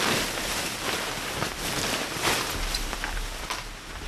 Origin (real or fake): fake